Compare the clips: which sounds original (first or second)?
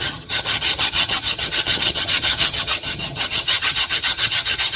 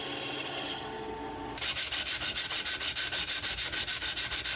second